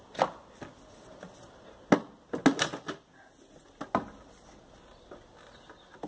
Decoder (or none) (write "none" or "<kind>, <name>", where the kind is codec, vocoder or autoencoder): none